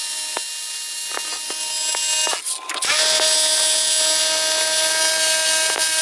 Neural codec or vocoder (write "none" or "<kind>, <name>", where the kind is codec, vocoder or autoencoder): none